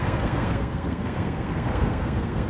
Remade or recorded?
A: remade